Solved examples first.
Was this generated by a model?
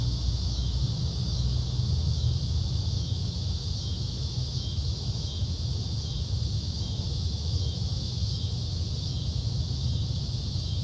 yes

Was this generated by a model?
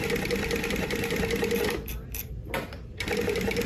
yes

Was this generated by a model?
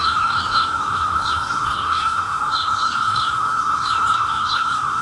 yes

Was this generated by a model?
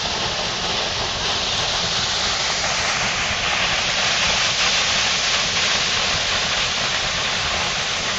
no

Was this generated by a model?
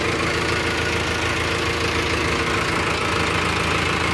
no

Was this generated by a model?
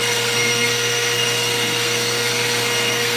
yes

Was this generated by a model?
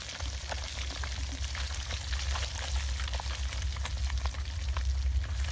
no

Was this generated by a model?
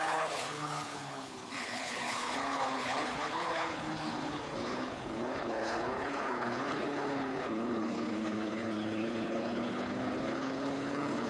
yes